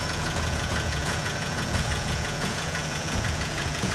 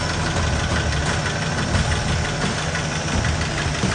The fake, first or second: first